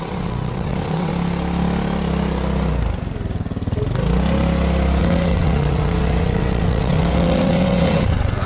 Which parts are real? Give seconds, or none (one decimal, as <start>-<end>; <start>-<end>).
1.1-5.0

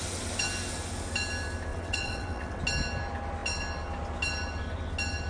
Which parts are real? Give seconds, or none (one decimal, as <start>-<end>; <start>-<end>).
0.0-1.7; 2.6-5.3

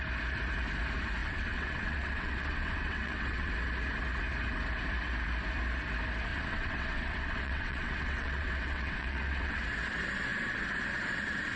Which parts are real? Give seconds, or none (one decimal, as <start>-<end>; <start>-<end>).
0.0-1.2; 3.5-6.3; 9.5-11.6

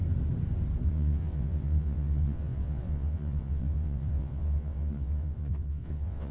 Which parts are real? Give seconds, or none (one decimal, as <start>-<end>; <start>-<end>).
0.0-0.9